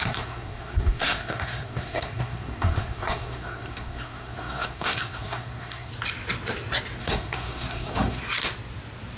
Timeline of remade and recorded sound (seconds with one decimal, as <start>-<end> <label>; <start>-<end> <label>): 0.0-5.9 remade; 5.9-7.0 recorded; 7.0-8.2 remade; 8.2-9.2 recorded